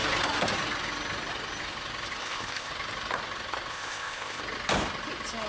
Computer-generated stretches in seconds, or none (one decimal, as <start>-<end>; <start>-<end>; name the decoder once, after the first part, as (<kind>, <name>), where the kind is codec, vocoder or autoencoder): 2.2-2.7 (codec, ZipCodec); 3.7-4.4